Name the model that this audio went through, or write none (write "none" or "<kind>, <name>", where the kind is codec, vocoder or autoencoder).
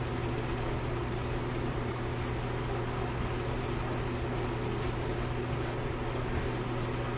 none